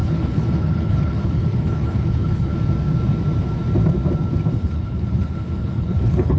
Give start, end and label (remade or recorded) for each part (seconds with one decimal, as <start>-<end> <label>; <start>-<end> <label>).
0.0-2.5 remade; 2.5-4.5 recorded; 4.5-6.4 remade